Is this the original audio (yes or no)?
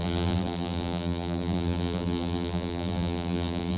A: no